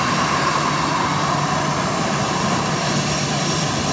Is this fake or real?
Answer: real